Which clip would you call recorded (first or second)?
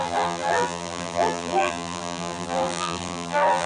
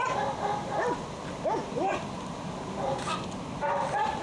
second